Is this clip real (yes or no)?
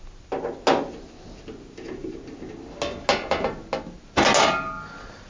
yes